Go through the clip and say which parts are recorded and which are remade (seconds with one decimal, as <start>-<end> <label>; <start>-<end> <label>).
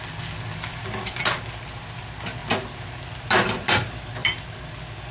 0.0-4.2 recorded; 4.2-5.1 remade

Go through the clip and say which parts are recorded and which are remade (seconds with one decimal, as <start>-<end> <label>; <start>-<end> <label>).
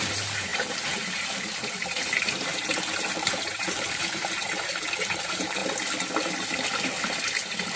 0.0-5.6 remade; 5.6-7.8 recorded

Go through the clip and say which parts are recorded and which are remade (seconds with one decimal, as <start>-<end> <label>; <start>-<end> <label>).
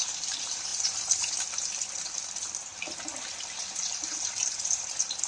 0.0-2.7 remade; 2.7-3.4 recorded; 3.4-5.3 remade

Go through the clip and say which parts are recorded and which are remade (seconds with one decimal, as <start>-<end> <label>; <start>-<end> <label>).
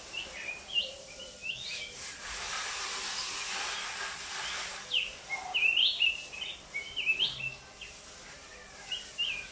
0.0-1.4 remade; 1.4-5.3 recorded; 5.3-5.8 remade; 5.8-9.5 recorded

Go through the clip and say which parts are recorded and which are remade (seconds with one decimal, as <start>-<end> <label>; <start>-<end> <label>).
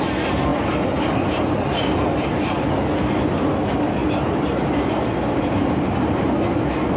0.0-7.0 recorded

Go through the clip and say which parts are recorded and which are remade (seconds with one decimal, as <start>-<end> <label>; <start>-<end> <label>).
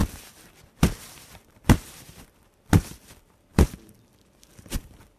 0.0-3.1 recorded; 3.1-5.2 remade